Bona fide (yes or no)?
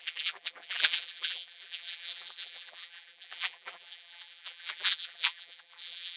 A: no